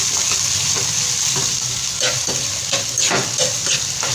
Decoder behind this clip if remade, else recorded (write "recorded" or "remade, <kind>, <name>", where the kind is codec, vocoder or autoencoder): recorded